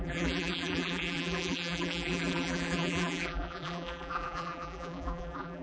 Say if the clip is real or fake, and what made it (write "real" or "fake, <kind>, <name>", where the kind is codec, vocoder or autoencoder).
fake, vocoder, BigVGAN v2